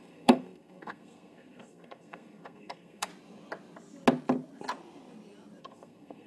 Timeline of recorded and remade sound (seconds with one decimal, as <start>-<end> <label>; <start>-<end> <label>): 0.0-3.1 remade; 3.1-5.6 recorded; 5.6-6.3 remade